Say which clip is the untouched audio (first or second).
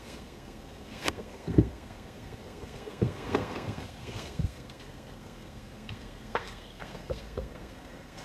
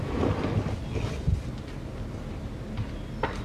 second